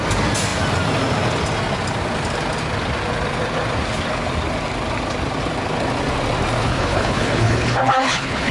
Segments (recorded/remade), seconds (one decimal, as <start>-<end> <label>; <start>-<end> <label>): 0.0-6.6 recorded; 6.6-8.5 remade